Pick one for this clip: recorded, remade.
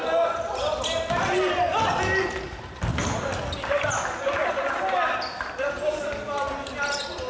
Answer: recorded